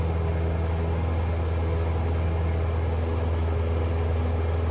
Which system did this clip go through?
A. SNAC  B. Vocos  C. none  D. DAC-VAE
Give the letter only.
C